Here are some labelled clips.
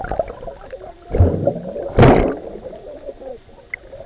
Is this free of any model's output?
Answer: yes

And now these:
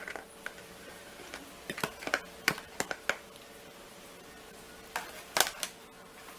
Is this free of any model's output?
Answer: yes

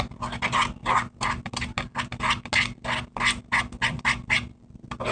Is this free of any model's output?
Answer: yes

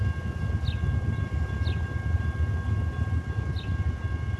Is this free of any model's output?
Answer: yes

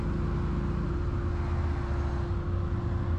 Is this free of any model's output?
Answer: yes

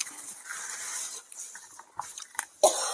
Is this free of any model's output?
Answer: yes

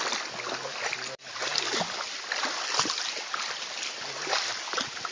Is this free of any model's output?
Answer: yes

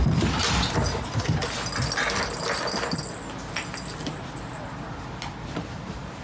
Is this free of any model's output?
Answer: yes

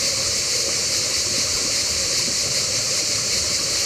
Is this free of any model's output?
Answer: no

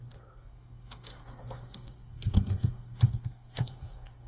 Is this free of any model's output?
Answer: no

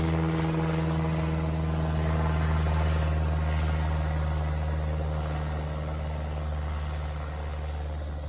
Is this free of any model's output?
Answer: yes